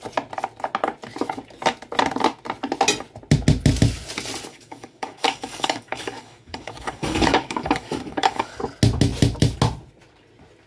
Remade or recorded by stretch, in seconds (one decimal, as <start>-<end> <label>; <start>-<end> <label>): 0.0-4.5 recorded; 4.5-8.6 remade; 8.6-10.7 recorded